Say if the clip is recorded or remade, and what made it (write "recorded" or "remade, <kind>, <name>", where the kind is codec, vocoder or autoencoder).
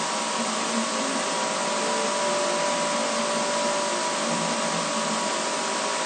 recorded